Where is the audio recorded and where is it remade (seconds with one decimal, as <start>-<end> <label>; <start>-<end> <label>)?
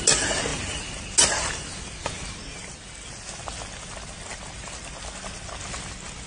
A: 0.0-6.3 recorded